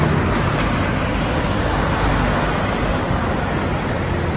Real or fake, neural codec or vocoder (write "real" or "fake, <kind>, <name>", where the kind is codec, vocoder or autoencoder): real